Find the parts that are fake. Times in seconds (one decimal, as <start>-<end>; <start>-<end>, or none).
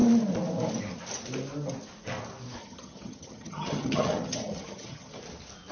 2.6-5.2